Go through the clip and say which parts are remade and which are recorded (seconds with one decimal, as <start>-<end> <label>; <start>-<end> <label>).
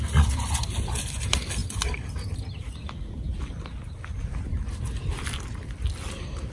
0.0-6.5 recorded